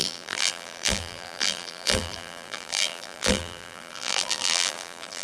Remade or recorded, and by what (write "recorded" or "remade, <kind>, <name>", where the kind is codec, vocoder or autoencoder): remade, vocoder, BigVGAN v2